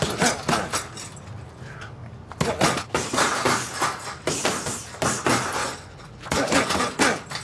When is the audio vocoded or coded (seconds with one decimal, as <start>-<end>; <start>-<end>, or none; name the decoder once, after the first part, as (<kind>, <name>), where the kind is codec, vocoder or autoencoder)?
5.6-7.0 (vocoder, Vocos)